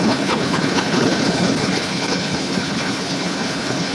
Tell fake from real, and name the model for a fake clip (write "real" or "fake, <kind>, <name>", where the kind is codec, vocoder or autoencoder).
fake, codec, HILCodec